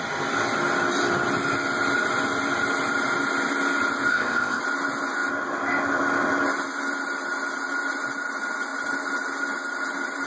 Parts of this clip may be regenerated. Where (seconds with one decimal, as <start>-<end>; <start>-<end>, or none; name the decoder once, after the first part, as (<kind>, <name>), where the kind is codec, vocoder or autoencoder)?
4.1-4.6 (codec, ZipCodec)

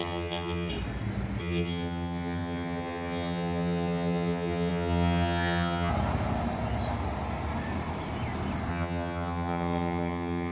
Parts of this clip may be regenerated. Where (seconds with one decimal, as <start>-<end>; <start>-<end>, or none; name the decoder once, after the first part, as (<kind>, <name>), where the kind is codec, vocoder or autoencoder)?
0.0-0.7 (vocoder, HiFi-GAN); 1.4-5.9; 8.7-10.5

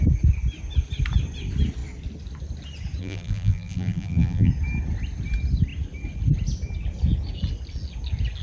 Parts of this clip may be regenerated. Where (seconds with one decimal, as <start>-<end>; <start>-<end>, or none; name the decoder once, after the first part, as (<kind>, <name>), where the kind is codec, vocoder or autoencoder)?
3.0-4.5 (vocoder, BigVGAN v2)

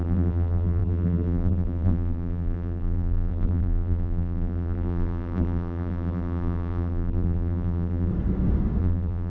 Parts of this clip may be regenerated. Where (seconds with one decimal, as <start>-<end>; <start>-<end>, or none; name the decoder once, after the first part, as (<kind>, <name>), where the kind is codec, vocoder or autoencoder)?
0.0-8.1 (vocoder, BigVGAN v2); 8.8-9.3

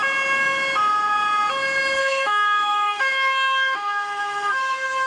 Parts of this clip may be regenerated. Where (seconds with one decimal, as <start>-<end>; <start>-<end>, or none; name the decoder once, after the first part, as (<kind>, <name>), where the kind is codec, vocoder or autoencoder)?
2.0-5.1 (autoencoder, DAC-VAE)

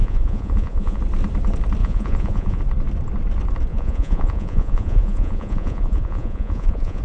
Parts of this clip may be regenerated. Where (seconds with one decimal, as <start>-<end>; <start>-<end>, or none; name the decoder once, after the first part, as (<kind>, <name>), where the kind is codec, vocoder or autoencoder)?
0.0-1.0 (vocoder, Vocos); 1.8-2.6; 3.7-7.0

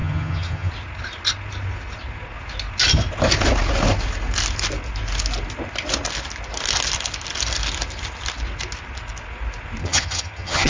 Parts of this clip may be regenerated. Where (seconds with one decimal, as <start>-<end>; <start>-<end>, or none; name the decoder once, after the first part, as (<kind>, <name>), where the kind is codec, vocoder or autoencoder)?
0.0-0.7 (vocoder, HiFi-GAN); 9.8-10.7

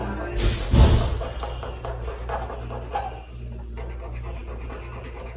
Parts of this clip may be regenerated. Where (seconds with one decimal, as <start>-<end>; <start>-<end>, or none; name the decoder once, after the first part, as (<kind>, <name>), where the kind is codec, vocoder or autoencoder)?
none